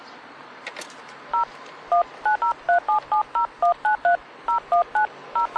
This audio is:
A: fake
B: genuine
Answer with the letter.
B